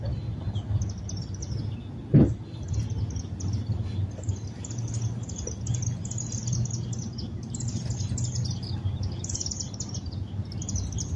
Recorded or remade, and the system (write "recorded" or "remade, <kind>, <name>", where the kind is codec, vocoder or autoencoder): recorded